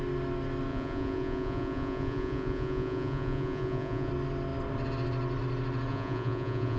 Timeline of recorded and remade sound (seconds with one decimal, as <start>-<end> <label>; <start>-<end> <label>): 0.0-0.7 recorded; 0.7-4.1 remade; 4.1-5.9 recorded; 5.9-6.8 remade